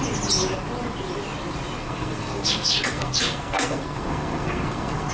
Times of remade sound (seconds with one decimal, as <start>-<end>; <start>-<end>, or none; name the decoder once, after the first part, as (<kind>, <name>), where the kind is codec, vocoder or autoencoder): 1.8-5.1 (codec, SNAC)